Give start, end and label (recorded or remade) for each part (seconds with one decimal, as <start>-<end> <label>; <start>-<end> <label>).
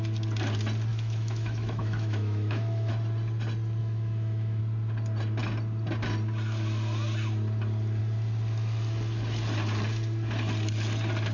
0.0-0.9 recorded; 0.9-2.9 remade; 2.9-3.8 recorded; 3.8-4.6 remade; 4.6-11.3 recorded